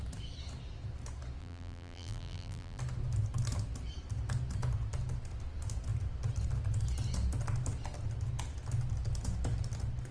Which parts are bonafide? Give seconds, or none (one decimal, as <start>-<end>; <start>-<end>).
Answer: 0.0-1.4; 2.8-10.1